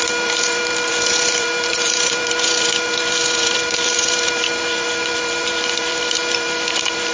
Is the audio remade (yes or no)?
yes